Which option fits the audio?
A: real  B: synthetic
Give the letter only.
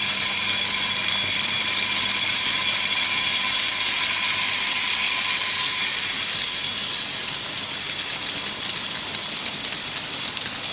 A